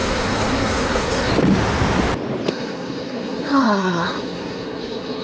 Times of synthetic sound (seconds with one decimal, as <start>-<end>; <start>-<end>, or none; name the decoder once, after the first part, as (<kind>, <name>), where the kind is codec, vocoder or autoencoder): 0.0-1.3 (codec, SNAC); 2.5-5.2